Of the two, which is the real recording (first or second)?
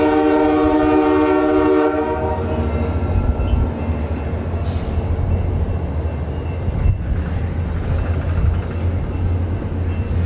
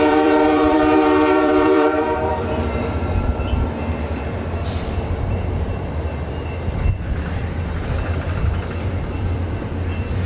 first